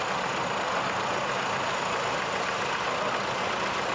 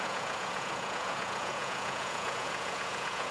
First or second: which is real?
first